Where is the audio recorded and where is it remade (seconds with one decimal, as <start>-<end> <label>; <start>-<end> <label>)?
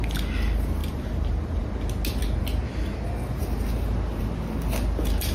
0.0-0.8 recorded; 0.8-1.7 remade; 1.7-5.3 recorded